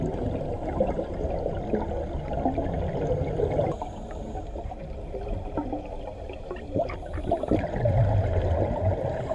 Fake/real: real